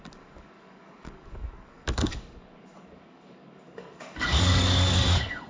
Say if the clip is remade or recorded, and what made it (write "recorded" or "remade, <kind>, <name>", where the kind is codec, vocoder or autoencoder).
remade, codec, DAC